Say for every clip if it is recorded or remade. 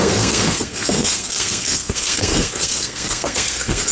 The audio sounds remade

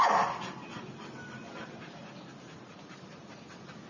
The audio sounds recorded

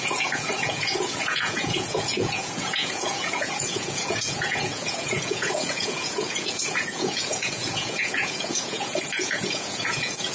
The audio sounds remade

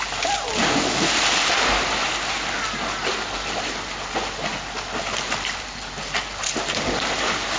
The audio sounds recorded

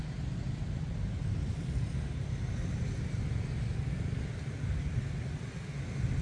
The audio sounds recorded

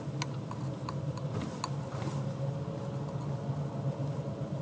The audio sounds recorded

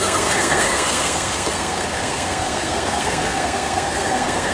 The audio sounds remade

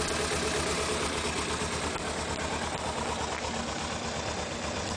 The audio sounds recorded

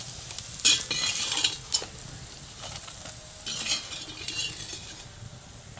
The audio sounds recorded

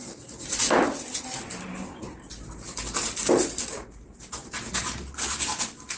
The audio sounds recorded